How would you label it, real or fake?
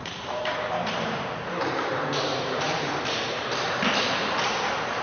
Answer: fake